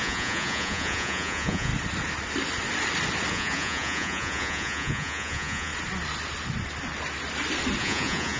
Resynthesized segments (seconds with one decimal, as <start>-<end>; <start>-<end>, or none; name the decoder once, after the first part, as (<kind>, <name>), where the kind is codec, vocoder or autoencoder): 0.0-1.7 (vocoder, Vocos); 3.3-5.7; 7.8-8.4